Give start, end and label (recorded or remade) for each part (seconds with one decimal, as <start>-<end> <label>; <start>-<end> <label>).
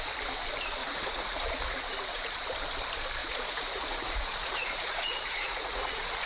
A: 0.0-0.8 recorded; 0.8-2.3 remade; 2.3-3.2 recorded; 3.2-6.3 remade